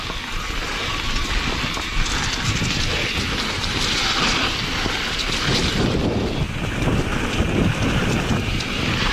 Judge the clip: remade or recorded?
recorded